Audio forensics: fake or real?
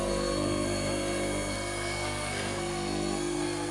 fake